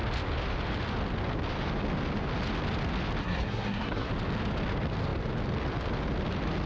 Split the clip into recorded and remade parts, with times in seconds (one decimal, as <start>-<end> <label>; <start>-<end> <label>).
0.0-3.2 recorded; 3.2-4.1 remade; 4.1-6.7 recorded